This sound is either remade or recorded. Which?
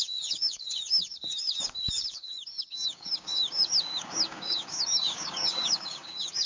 remade